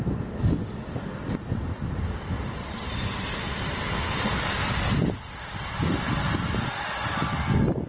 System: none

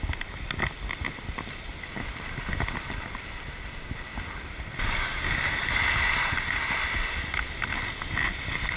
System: none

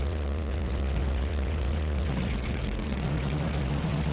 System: vocoder, Vocos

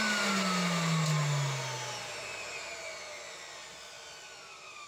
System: none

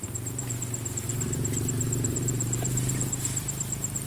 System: vocoder, BigVGAN v2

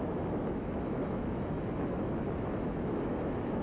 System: autoencoder, DAC-VAE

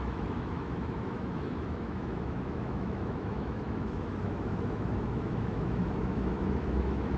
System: autoencoder, DAC-VAE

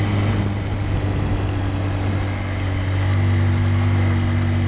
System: none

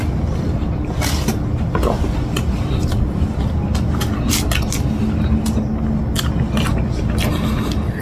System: none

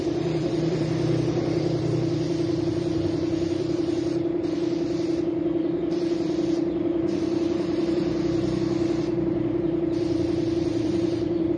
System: vocoder, BigVGAN v2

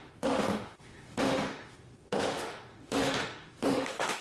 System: autoencoder, DAC-VAE